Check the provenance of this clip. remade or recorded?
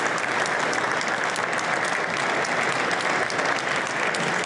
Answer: recorded